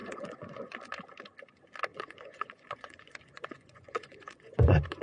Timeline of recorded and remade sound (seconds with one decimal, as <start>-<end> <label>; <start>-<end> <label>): 0.0-0.8 remade; 0.8-1.9 recorded; 1.9-5.0 remade